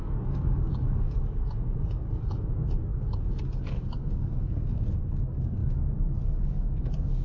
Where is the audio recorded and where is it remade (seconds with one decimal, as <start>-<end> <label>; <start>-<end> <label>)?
0.0-7.2 remade